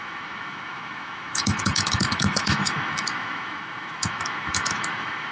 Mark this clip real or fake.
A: fake